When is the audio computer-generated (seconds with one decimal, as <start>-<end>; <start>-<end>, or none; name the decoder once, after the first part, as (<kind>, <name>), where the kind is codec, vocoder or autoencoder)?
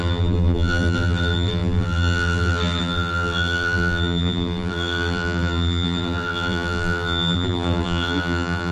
0.0-8.7 (vocoder, BigVGAN v2)